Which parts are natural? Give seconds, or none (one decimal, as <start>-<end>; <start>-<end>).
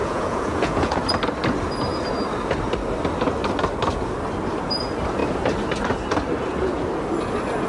1.0-7.7